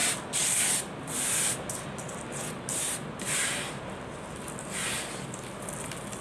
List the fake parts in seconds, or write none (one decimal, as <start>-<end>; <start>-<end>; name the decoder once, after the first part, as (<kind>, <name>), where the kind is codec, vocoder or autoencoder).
none